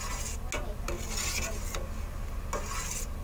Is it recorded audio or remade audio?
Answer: recorded